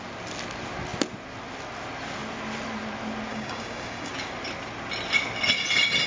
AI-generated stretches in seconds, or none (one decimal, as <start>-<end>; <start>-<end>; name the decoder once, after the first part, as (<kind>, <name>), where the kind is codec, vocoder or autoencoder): 3.3-4.1 (codec, DAC)